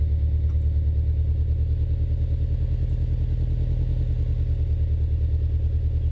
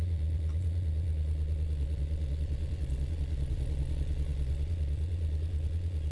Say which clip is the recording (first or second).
first